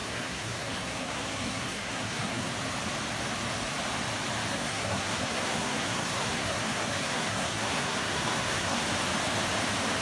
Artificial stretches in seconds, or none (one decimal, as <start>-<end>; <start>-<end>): 0.0-2.5; 4.5-8.8